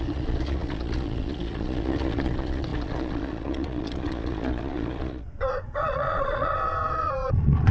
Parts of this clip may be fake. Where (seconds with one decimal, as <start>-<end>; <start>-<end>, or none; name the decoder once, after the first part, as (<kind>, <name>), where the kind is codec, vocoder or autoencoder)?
0.0-7.7 (vocoder, Vocos)